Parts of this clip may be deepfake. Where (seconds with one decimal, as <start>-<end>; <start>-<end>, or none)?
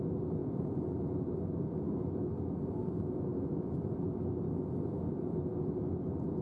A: 0.4-1.2